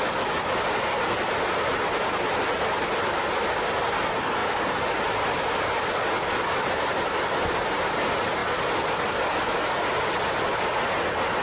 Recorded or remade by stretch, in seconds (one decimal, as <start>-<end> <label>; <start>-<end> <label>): 0.0-11.4 recorded